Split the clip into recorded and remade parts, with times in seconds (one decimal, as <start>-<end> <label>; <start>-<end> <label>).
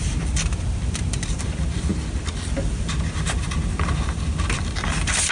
0.0-1.9 remade; 1.9-2.5 recorded; 2.5-5.3 remade